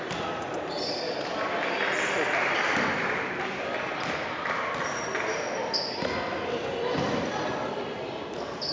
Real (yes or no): yes